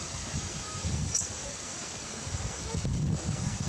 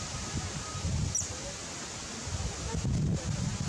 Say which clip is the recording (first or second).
second